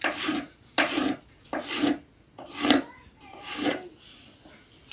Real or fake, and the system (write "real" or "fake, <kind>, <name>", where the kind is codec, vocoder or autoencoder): real